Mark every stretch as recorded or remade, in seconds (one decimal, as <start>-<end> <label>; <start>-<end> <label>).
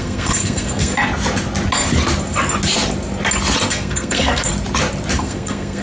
0.0-0.9 remade; 0.9-3.7 recorded; 3.7-4.5 remade; 4.5-5.2 recorded; 5.2-5.8 remade